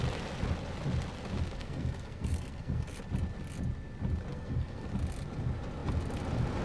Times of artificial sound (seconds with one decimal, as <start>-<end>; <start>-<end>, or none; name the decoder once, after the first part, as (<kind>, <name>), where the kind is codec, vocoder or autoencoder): 1.6-3.0 (codec, SNAC); 4.3-4.9